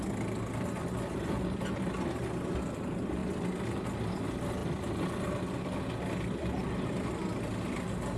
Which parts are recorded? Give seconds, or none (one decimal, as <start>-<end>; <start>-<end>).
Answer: 0.0-8.2